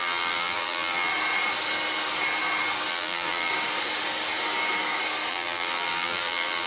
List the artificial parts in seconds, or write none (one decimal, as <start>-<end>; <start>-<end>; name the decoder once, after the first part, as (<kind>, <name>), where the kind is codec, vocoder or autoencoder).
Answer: 0.0-1.1 (vocoder, BigVGAN v2); 2.9-3.5; 5.3-6.7